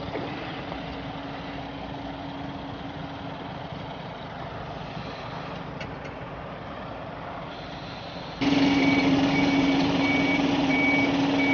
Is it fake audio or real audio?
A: real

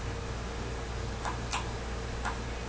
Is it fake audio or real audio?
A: real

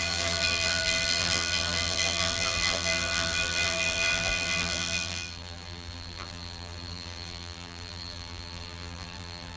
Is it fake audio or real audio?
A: fake